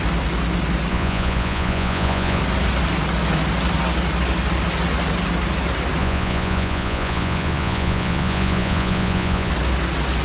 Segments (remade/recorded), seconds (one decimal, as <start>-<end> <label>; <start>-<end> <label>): 0.0-0.9 recorded; 0.9-2.4 remade; 2.4-6.0 recorded; 6.0-9.5 remade; 9.5-10.2 recorded